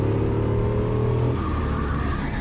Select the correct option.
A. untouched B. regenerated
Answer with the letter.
A